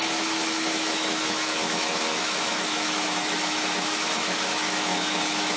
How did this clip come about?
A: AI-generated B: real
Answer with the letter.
A